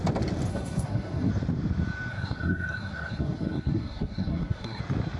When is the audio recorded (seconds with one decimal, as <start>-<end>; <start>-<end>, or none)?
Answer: 0.0-0.5; 1.3-2.1; 4.8-5.2